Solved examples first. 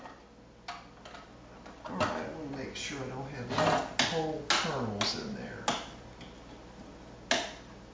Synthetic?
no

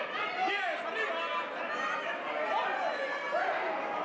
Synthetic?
no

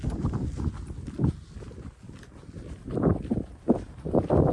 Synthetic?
yes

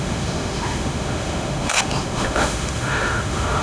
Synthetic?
yes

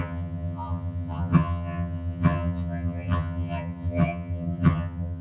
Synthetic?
yes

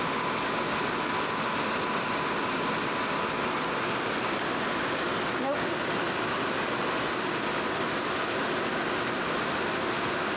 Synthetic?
no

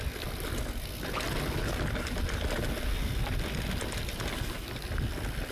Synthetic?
no